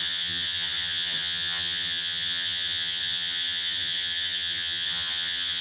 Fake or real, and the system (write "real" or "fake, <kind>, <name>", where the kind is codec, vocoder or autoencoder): fake, vocoder, HiFi-GAN